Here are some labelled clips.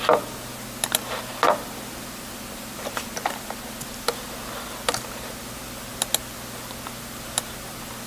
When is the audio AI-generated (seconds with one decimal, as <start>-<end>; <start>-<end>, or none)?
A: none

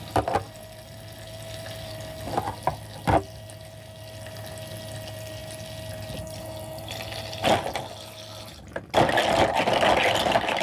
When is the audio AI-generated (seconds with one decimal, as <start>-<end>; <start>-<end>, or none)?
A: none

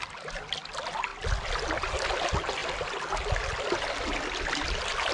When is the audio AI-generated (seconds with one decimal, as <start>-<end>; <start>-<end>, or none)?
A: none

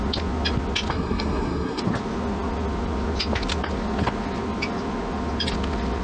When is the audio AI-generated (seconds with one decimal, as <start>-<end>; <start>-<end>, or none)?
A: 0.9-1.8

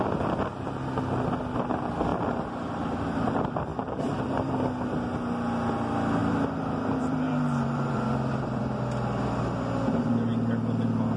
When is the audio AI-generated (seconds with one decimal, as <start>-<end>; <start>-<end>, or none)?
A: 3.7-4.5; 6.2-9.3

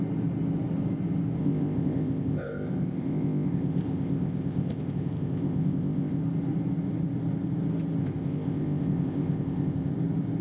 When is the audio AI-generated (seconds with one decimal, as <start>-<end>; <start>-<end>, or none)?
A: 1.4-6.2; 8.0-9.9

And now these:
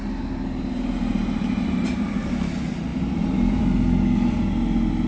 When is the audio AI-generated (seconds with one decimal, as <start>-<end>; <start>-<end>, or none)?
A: none

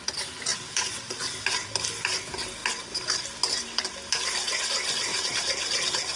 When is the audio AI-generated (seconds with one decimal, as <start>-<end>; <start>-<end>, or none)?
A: 0.5-1.2; 5.1-5.8